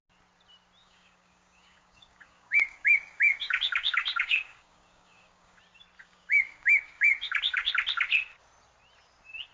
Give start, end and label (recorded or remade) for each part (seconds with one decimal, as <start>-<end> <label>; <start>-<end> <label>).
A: 0.0-0.8 recorded; 0.8-5.6 remade; 5.6-6.0 recorded; 6.0-7.7 remade; 7.7-9.5 recorded